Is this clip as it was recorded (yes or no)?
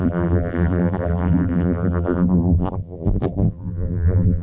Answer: no